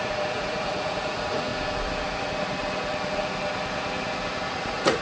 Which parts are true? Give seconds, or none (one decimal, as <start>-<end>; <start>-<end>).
1.5-4.5

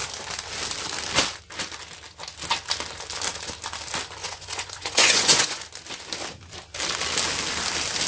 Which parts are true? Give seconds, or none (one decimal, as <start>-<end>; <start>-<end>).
0.0-4.2; 5.6-8.1